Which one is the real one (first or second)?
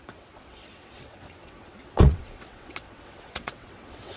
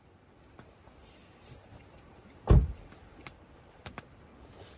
second